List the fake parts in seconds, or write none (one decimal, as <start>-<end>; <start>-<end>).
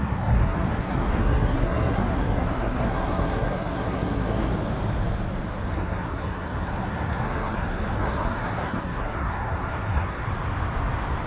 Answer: 0.0-4.5; 5.7-10.2